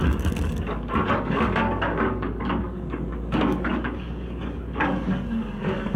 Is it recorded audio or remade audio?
remade